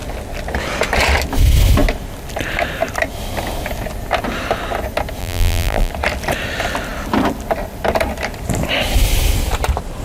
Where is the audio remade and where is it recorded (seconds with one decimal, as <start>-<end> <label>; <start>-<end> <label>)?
0.0-5.2 recorded; 5.2-5.9 remade; 5.9-10.0 recorded